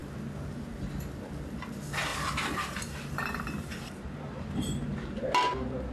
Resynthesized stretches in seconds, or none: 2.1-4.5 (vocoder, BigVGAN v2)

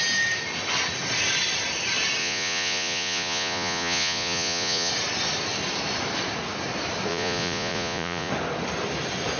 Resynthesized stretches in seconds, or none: 2.2-4.9 (vocoder, Vocos); 7.1-8.3

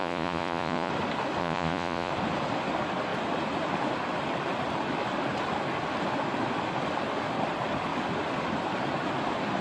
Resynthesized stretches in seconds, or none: 0.0-0.9 (vocoder, Vocos); 1.4-2.1

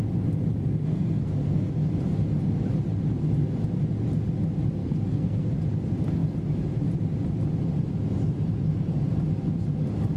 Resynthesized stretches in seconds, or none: 0.8-1.7 (codec, SNAC); 4.8-5.5

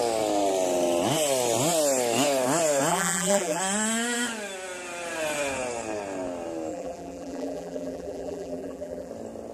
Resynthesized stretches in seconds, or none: 2.9-3.6 (vocoder, BigVGAN v2); 6.7-9.1

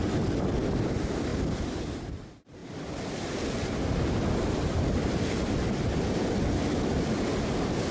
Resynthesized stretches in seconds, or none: 0.0-7.9 (vocoder, BigVGAN v2)